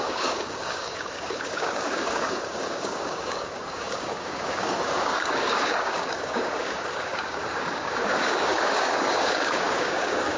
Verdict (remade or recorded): remade